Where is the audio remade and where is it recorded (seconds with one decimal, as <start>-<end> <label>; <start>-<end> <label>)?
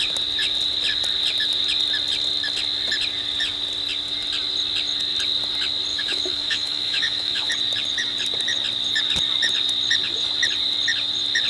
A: 0.0-5.9 recorded; 5.9-7.5 remade; 7.5-11.5 recorded